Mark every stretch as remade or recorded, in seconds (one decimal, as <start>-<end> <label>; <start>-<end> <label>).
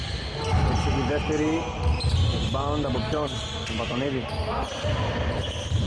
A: 0.0-5.9 recorded